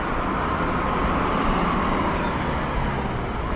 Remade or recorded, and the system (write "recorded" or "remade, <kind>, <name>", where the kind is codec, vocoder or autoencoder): recorded